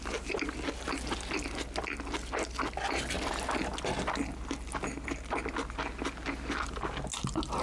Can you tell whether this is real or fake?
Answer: real